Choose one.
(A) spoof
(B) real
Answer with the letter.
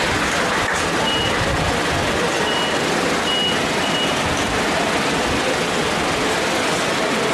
B